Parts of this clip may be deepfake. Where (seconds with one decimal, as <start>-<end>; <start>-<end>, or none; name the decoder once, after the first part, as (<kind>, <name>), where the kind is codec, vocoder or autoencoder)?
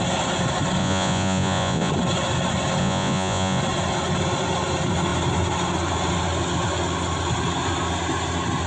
0.8-1.9 (vocoder, Vocos); 2.8-3.6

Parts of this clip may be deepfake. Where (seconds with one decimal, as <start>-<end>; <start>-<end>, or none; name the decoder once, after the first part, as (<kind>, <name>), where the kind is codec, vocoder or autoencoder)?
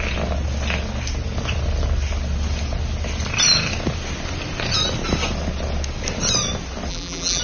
6.9-7.4 (vocoder, BigVGAN v2)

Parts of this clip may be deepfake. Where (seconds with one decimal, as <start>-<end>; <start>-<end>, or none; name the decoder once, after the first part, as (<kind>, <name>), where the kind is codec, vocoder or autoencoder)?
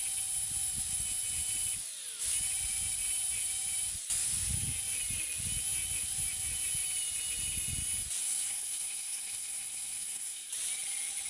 8.2-10.5 (codec, SNAC)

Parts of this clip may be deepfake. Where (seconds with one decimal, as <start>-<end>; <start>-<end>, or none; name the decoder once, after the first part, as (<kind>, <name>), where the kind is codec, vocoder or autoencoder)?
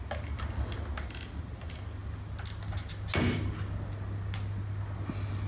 none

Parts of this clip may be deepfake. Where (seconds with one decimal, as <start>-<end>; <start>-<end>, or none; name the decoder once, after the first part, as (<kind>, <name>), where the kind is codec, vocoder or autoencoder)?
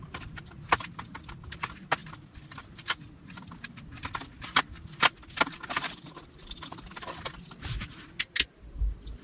none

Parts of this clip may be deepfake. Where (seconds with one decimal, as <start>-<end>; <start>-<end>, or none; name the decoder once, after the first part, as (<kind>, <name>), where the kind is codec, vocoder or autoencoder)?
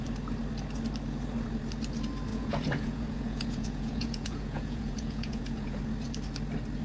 2.3-5.8 (vocoder, Vocos)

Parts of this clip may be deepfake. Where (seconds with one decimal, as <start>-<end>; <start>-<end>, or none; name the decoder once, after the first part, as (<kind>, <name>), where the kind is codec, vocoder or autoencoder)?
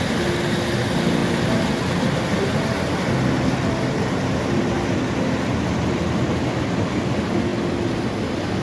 none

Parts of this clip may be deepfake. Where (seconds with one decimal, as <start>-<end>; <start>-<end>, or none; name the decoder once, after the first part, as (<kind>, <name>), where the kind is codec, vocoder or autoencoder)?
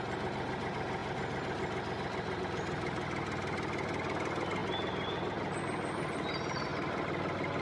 none